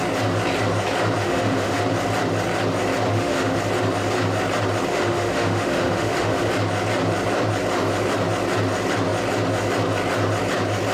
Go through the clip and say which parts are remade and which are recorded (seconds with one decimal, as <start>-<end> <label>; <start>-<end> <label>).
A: 0.0-1.2 recorded; 1.2-1.8 remade; 1.8-3.1 recorded; 3.1-3.6 remade; 3.6-4.9 recorded; 4.9-6.5 remade; 6.5-10.9 recorded